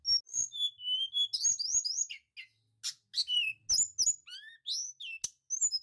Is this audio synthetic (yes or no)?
no